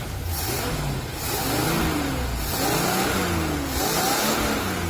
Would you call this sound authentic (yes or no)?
yes